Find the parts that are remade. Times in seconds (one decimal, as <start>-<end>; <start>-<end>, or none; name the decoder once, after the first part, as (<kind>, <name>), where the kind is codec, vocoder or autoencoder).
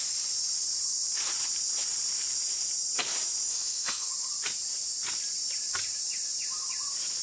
3.5-4.1 (autoencoder, DAC-VAE)